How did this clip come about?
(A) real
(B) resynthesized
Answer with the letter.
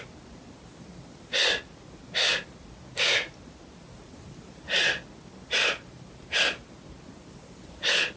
A